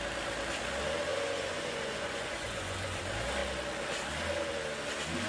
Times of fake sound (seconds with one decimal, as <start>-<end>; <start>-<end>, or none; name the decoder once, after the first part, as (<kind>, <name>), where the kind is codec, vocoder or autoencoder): 1.1-3.0 (vocoder, Vocos)